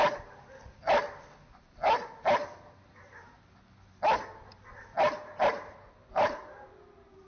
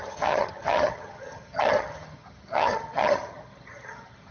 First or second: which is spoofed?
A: second